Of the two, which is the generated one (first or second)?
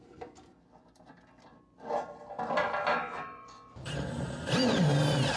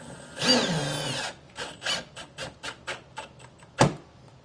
first